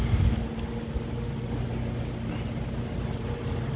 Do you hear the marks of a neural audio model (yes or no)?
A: no